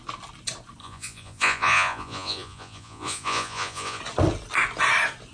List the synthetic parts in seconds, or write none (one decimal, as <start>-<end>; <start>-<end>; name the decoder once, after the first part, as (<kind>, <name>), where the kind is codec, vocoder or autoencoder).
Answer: 0.8-4.0 (vocoder, Vocos)